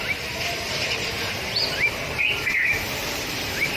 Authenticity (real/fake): fake